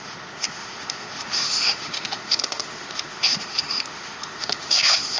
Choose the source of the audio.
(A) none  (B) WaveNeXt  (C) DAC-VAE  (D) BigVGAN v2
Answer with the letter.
C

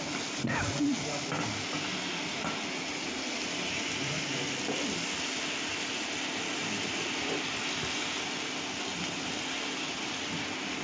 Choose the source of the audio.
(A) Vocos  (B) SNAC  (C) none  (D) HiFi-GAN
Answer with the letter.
C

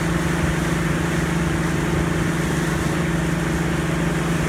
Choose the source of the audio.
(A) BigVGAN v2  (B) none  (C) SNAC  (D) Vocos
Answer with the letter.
B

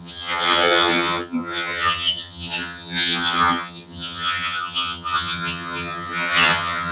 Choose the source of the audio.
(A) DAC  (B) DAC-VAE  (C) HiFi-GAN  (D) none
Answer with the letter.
C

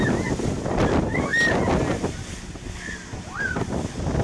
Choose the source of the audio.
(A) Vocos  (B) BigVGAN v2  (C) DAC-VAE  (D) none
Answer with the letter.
D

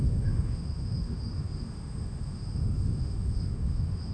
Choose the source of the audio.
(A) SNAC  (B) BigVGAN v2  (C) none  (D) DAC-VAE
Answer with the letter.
D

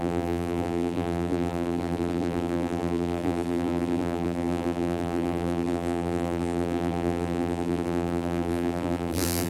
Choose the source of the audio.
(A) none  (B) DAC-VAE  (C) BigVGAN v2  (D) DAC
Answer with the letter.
C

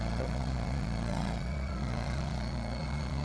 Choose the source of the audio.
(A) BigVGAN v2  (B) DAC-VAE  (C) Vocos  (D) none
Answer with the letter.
C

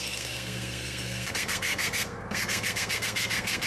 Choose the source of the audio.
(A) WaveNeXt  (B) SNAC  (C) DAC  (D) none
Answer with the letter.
B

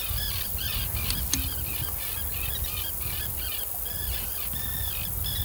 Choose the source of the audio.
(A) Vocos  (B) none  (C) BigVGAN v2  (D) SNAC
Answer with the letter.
B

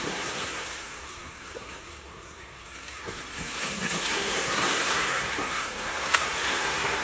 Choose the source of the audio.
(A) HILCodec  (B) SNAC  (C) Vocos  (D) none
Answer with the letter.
B